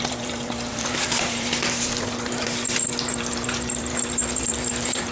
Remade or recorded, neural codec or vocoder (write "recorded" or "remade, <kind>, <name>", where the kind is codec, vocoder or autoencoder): remade, vocoder, BigVGAN v2